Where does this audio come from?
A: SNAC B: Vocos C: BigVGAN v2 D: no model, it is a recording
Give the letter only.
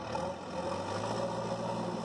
D